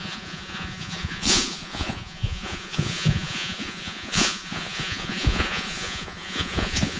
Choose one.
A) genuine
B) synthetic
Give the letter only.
B